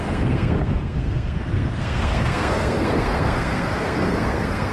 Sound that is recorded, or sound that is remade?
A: remade